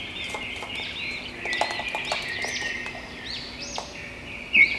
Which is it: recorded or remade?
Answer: recorded